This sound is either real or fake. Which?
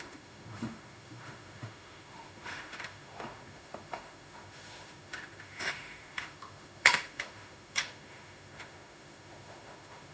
fake